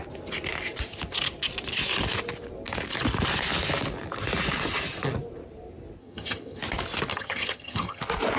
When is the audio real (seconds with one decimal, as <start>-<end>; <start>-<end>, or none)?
0.0-6.0; 6.6-7.1; 8.0-8.4